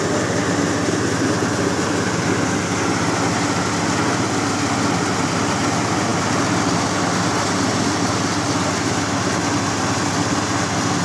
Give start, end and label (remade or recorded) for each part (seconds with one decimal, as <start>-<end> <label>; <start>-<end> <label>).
0.0-11.0 recorded